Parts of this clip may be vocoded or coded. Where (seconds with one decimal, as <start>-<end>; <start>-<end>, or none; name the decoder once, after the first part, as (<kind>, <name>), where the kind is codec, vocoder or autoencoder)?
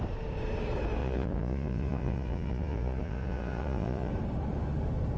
1.0-4.1 (vocoder, Vocos)